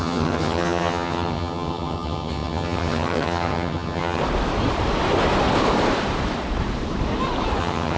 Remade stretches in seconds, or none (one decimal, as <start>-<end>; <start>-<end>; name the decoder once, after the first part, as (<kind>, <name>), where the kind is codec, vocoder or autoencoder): 0.0-4.2 (vocoder, HiFi-GAN); 7.6-8.0